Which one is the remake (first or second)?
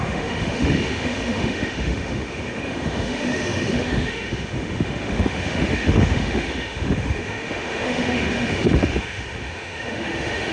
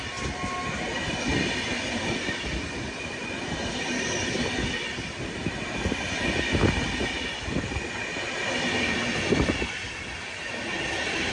first